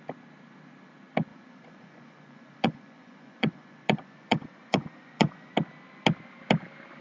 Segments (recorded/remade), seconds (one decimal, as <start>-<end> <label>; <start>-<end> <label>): 0.0-1.3 recorded; 1.3-5.5 remade; 5.5-7.0 recorded